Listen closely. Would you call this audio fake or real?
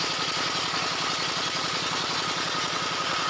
real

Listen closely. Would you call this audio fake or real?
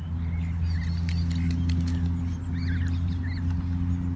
real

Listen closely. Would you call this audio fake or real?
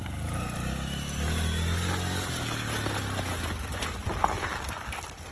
real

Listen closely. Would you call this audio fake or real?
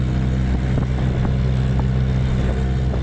real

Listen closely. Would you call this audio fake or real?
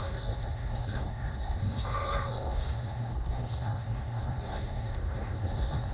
fake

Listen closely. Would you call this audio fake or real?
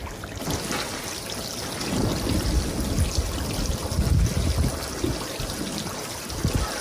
real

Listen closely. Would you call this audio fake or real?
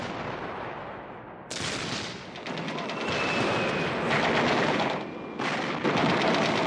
real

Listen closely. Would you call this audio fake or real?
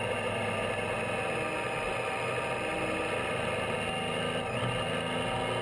real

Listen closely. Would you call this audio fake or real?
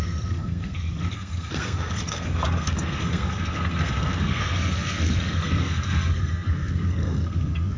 fake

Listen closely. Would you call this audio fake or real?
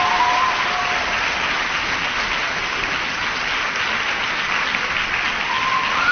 real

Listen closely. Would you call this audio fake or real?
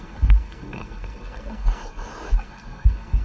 fake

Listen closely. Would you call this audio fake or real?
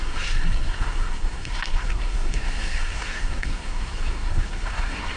fake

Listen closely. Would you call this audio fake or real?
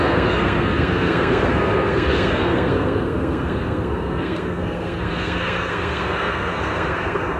fake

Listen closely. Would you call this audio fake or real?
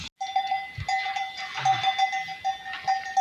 real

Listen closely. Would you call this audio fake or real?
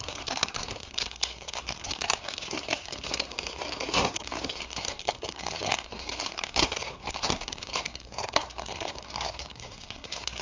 fake